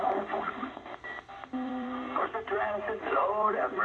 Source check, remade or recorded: remade